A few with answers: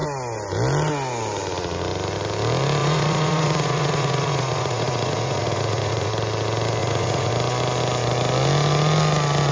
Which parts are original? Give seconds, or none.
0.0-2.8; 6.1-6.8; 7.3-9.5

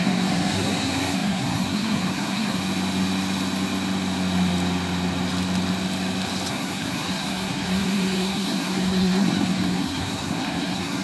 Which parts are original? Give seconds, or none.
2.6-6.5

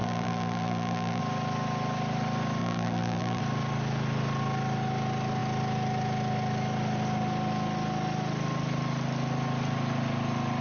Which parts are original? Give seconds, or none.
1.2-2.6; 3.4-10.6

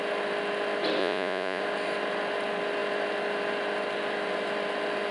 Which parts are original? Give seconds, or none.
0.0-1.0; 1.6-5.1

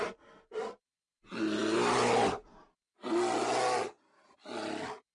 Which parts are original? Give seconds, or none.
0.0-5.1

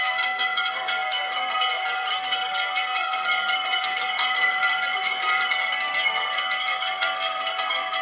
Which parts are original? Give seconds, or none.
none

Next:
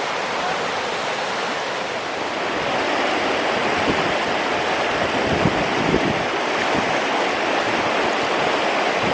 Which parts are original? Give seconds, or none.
0.0-9.1